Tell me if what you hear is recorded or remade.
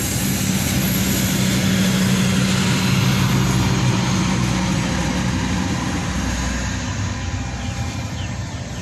recorded